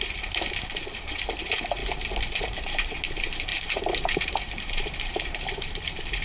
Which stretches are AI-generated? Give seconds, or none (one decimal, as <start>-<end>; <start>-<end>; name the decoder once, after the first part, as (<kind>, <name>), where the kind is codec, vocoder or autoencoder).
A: 0.0-1.8 (vocoder, BigVGAN v2); 2.4-6.2